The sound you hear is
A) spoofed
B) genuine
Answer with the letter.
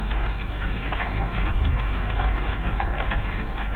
A